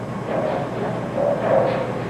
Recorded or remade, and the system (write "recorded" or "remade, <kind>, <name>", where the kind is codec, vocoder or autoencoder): recorded